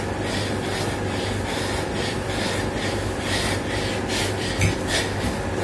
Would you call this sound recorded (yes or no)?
yes